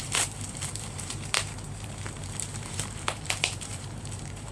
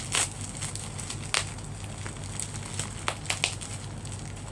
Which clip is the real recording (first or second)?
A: second